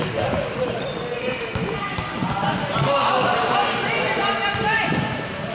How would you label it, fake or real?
real